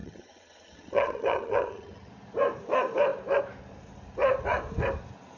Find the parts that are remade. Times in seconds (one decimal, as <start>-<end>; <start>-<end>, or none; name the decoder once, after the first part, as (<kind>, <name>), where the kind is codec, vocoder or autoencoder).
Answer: 0.0-2.1 (vocoder, HiFi-GAN)